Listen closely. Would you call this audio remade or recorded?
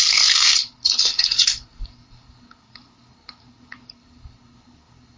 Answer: remade